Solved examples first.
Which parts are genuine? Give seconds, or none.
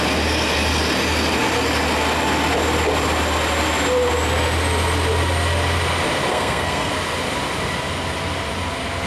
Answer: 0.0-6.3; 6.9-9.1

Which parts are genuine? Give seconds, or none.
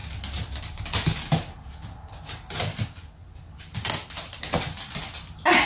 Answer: 0.0-5.7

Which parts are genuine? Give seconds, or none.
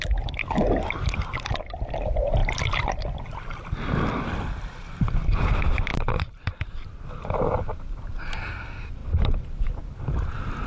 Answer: 0.0-5.9; 6.7-10.7